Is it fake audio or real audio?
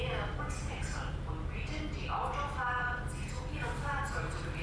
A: real